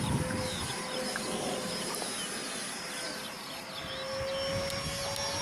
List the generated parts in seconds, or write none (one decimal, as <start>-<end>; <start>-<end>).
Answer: none